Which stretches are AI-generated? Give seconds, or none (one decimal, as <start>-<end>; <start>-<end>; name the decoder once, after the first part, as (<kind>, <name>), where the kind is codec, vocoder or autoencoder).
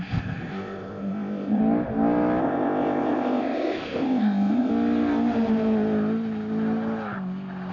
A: 0.0-1.6 (codec, ZipCodec); 2.4-4.7